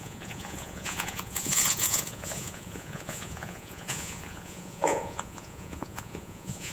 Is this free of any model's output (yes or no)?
no